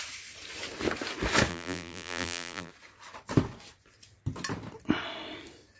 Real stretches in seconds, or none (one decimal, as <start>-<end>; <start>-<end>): 0.0-1.5; 2.7-5.8